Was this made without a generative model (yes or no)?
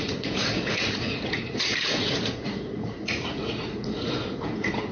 no